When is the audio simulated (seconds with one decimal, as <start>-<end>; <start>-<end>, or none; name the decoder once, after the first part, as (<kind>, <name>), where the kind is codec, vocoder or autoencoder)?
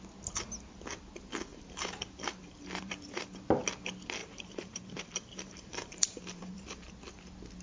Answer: 1.5-3.4 (vocoder, BigVGAN v2); 4.2-6.9